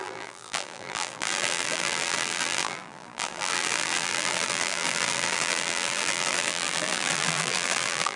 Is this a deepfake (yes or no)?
yes